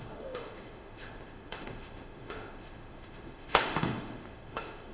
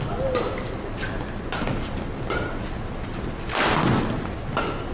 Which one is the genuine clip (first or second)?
second